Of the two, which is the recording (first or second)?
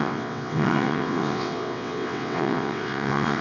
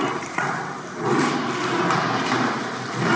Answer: second